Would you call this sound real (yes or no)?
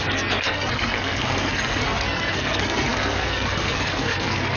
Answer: no